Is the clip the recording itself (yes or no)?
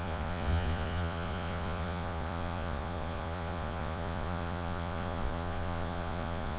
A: no